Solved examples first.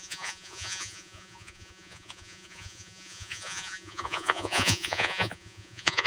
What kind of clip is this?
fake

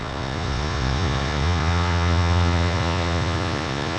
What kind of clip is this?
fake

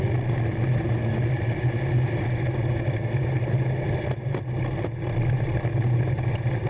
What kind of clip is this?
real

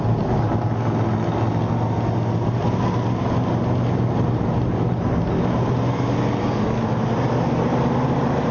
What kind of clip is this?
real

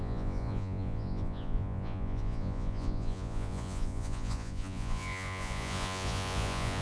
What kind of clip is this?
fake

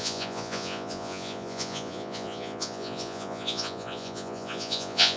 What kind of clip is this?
fake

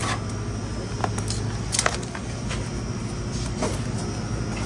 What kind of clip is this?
real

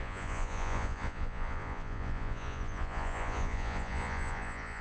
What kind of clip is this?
fake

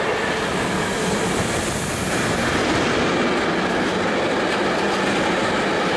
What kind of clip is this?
real